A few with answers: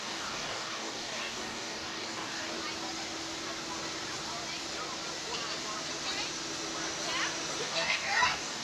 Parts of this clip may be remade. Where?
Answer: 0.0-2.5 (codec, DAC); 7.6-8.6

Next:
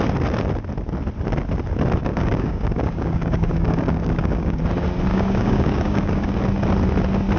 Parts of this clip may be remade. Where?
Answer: 2.1-4.6 (codec, DAC); 5.1-6.3

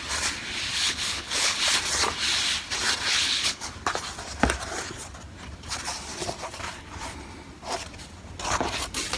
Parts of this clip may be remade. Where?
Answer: 0.7-1.6 (codec, HILCodec); 3.1-3.7